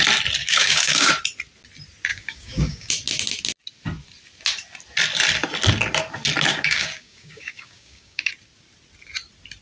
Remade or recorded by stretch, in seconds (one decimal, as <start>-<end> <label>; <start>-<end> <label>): 0.0-0.4 recorded; 0.4-1.1 remade; 1.1-2.1 recorded; 2.1-2.9 remade; 2.9-6.5 recorded; 6.5-8.3 remade; 8.3-9.6 recorded